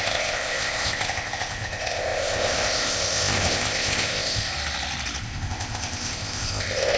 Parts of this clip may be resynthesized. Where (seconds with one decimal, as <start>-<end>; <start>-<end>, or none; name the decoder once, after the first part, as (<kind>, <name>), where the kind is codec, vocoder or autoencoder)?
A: 0.0-4.5 (codec, ZipCodec); 5.2-7.0